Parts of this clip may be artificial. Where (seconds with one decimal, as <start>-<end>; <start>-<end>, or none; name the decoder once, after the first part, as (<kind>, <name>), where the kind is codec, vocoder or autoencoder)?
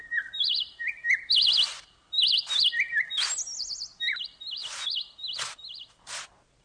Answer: none